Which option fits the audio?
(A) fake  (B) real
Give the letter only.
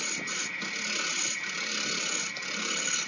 B